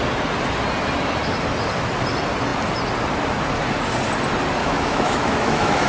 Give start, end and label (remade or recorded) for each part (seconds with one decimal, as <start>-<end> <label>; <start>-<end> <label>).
0.0-4.6 recorded; 4.6-5.9 remade